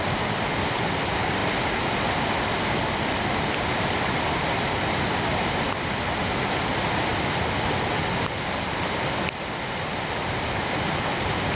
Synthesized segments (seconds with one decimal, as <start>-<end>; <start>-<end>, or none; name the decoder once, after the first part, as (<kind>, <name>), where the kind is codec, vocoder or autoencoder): none